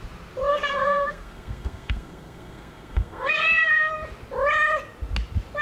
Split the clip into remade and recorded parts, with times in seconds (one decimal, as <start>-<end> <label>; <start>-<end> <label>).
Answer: 0.0-0.5 recorded; 0.5-3.9 remade; 3.9-5.6 recorded